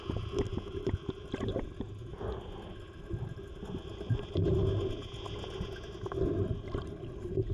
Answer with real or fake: real